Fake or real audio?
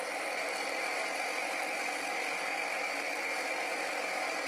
real